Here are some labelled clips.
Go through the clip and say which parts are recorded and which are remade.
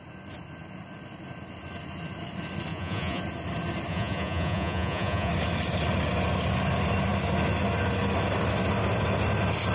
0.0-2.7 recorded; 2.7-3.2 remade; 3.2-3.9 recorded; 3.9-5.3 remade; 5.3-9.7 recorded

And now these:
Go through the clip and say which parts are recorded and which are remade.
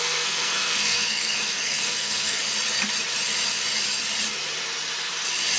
0.0-2.4 remade; 2.4-5.6 recorded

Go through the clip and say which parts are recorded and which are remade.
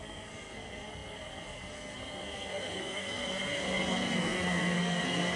0.0-5.4 remade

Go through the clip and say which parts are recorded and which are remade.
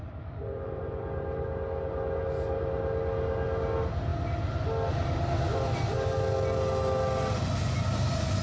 0.0-8.4 recorded